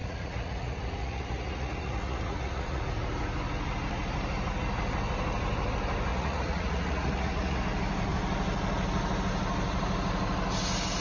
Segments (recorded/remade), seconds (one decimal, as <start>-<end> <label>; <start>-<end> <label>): 0.0-2.8 remade; 2.8-6.1 recorded; 6.1-7.6 remade; 7.6-11.0 recorded